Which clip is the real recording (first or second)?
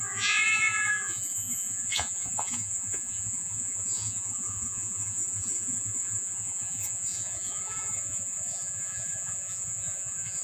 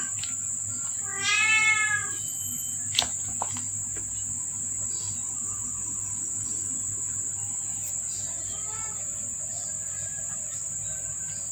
second